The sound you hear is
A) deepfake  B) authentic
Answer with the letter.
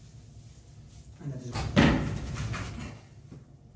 B